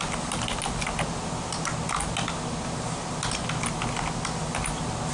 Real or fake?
real